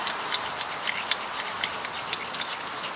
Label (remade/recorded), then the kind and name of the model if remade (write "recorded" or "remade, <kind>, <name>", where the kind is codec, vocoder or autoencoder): recorded